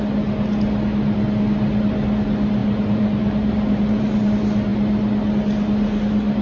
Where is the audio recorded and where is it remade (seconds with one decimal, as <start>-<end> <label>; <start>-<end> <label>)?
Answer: 0.0-2.6 recorded; 2.6-4.3 remade; 4.3-6.4 recorded